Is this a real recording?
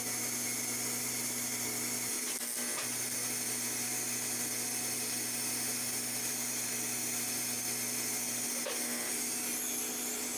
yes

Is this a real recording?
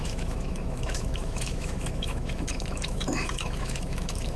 no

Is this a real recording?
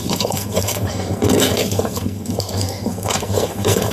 no